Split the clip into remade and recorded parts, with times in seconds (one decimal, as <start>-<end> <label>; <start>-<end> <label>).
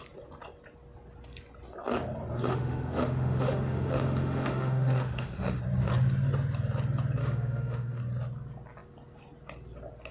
0.0-2.5 recorded; 2.5-5.6 remade; 5.6-7.2 recorded; 7.2-8.0 remade; 8.0-10.1 recorded